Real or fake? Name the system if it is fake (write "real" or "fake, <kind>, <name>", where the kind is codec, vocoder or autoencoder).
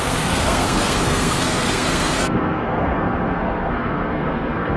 fake, codec, SNAC